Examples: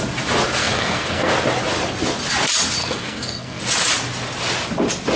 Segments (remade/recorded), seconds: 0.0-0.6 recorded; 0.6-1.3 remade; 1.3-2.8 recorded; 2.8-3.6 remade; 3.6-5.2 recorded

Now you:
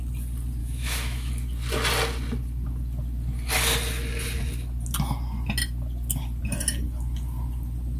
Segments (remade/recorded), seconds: 0.0-0.6 recorded; 0.6-1.3 remade; 1.3-8.0 recorded

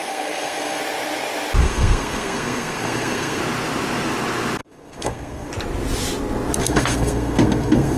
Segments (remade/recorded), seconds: 0.0-0.8 remade; 0.8-1.6 recorded; 1.6-3.4 remade; 3.4-4.6 recorded; 4.6-5.5 remade; 5.5-6.6 recorded; 6.6-8.0 remade

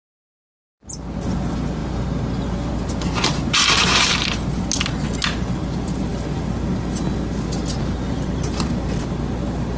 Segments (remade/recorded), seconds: 0.0-9.8 recorded

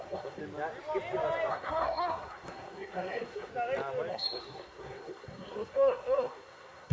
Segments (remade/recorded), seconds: 0.0-0.4 remade; 0.4-1.5 recorded; 1.5-3.5 remade; 3.5-4.1 recorded; 4.1-6.9 remade

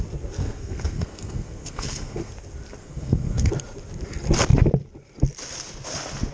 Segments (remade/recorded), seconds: 0.0-0.4 recorded; 0.4-2.3 remade; 2.3-2.8 recorded; 2.8-3.5 remade; 3.5-6.3 recorded

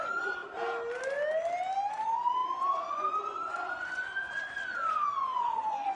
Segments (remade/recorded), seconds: 0.0-0.4 remade; 0.4-1.9 recorded; 1.9-6.0 remade